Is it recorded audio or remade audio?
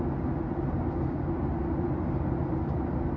recorded